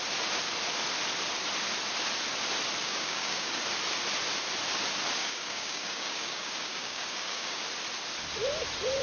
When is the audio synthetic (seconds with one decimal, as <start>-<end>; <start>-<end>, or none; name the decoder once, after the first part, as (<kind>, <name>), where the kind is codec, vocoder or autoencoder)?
2.8-3.6 (codec, DAC); 5.2-7.6